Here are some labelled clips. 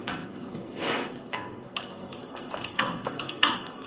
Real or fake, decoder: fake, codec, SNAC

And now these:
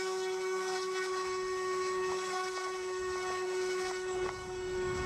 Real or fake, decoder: fake, autoencoder, DAC-VAE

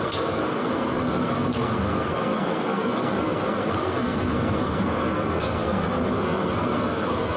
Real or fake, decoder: fake, codec, SNAC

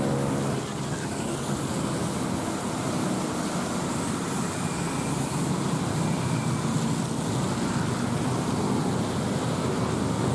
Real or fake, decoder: real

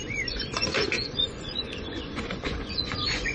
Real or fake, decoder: fake, vocoder, Vocos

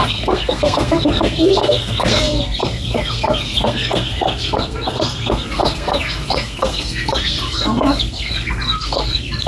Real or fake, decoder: fake, codec, SNAC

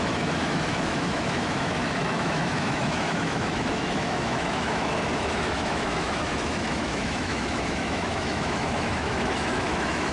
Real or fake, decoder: fake, autoencoder, DAC-VAE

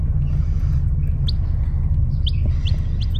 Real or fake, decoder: real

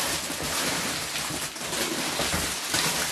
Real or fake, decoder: real